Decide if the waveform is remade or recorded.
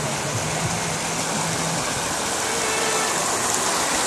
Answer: recorded